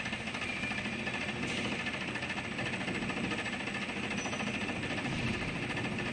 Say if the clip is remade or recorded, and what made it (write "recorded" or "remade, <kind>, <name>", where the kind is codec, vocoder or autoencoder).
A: recorded